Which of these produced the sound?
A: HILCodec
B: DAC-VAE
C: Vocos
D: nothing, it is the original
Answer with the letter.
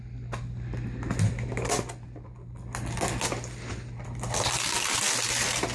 D